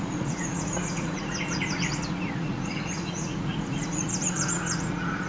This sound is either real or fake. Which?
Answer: fake